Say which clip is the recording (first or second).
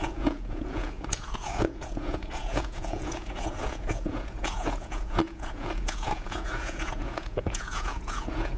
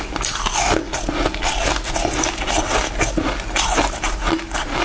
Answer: second